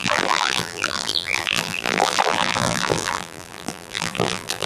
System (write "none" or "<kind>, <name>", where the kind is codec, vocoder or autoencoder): vocoder, BigVGAN v2